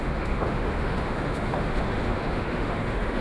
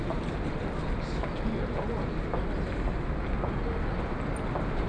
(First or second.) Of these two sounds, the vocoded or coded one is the first